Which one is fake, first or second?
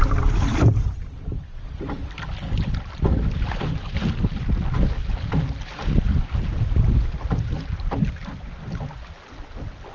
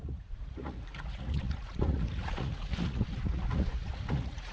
second